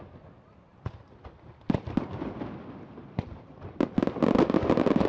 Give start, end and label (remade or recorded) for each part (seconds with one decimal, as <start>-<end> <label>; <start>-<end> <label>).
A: 0.0-5.1 recorded